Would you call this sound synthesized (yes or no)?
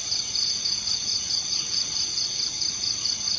yes